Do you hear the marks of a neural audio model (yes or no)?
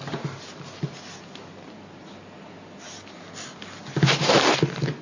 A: no